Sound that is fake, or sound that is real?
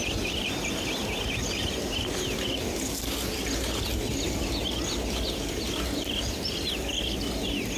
real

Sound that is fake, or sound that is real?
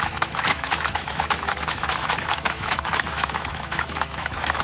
fake